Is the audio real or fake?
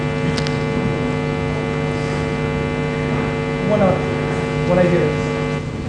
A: real